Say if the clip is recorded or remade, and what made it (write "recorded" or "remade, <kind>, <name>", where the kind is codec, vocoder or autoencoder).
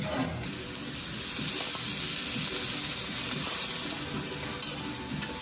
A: recorded